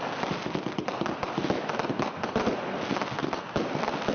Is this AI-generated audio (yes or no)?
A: no